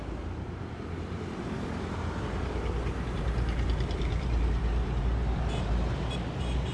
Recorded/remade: remade